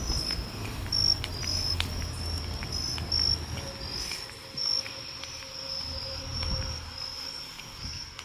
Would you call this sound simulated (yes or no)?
no